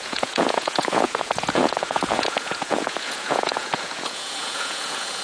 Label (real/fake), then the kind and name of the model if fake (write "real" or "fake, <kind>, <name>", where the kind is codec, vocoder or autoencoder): fake, vocoder, Vocos